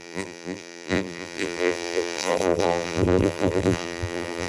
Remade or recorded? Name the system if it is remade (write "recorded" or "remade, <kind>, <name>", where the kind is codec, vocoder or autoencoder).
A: remade, vocoder, BigVGAN v2